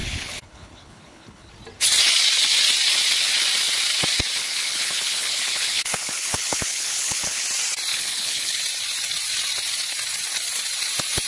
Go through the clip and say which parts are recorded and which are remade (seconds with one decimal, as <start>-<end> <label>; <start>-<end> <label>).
0.0-1.5 remade; 1.5-4.4 recorded; 4.4-7.4 remade; 7.4-7.9 recorded; 7.9-8.6 remade; 8.6-11.3 recorded